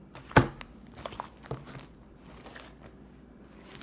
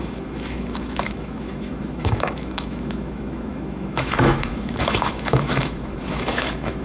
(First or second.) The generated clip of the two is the second